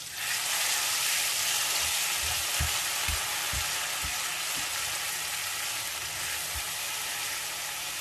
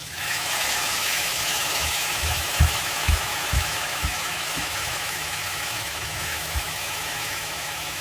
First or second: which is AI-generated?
second